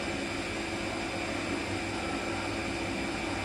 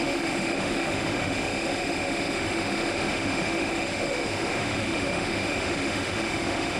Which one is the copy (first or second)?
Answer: second